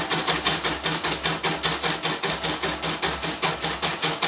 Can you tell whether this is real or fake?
real